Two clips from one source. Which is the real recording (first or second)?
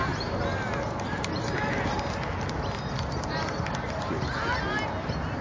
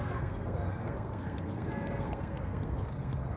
first